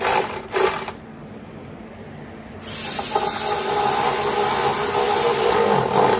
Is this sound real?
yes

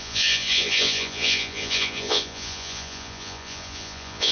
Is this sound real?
no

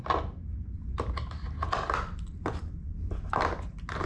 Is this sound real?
yes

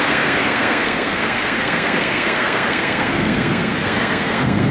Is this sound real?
no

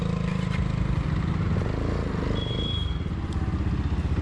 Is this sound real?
yes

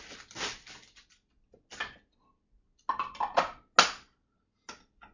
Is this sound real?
yes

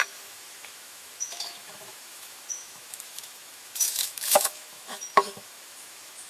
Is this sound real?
no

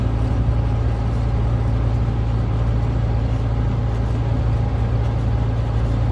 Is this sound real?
yes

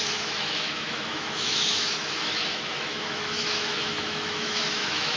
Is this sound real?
no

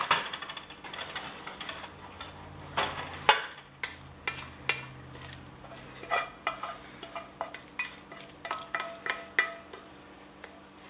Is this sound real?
yes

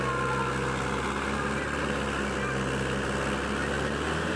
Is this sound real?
yes